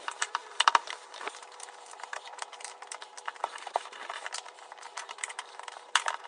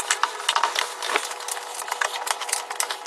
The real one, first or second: second